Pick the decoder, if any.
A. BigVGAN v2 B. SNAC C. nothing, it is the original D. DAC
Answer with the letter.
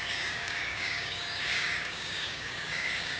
D